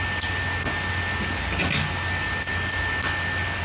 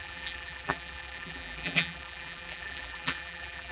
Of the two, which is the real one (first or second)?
first